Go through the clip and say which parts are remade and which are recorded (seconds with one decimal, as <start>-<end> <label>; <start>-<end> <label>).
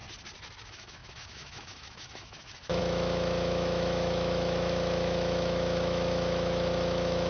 0.0-0.6 recorded; 0.6-7.3 remade